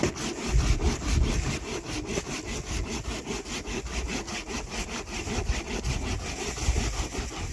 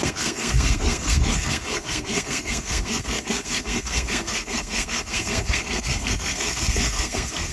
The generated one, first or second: second